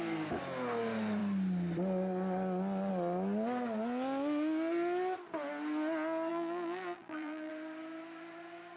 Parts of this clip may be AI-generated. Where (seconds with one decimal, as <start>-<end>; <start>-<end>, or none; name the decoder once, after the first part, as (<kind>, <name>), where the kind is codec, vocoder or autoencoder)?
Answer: 6.3-7.5 (vocoder, BigVGAN v2)